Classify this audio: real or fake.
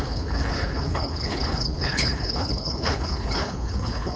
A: fake